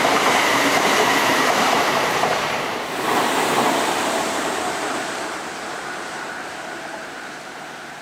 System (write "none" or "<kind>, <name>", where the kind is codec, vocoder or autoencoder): vocoder, BigVGAN v2